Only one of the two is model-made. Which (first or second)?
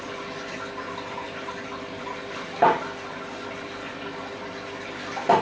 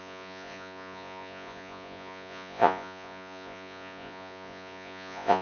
second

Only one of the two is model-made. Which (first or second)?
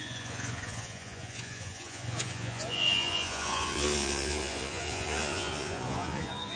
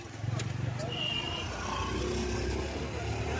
first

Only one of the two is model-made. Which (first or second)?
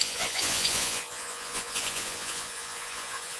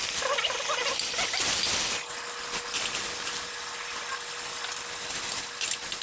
first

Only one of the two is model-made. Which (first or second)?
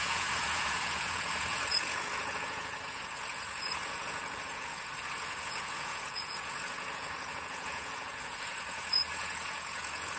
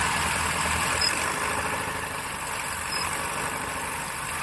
first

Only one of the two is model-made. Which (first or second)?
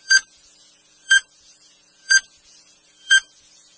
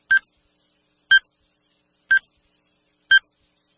first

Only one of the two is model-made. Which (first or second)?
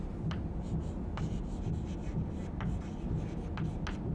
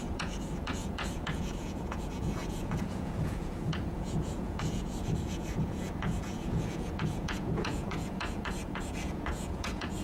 second